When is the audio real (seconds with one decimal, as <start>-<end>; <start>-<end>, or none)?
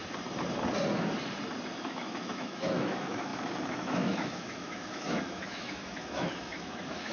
0.0-1.8